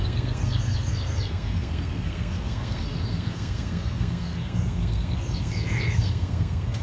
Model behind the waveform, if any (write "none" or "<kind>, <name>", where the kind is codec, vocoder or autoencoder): codec, SNAC